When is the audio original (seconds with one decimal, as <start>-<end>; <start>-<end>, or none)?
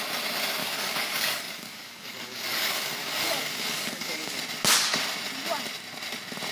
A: 0.0-0.6; 4.4-6.5